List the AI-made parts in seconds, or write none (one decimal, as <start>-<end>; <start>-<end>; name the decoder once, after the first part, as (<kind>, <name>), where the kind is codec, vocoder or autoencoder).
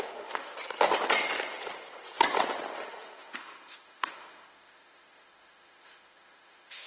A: 0.0-0.5 (autoencoder, DAC-VAE); 2.7-6.9